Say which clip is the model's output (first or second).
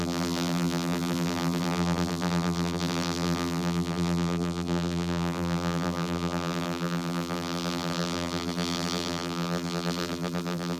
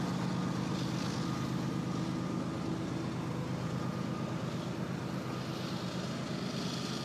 first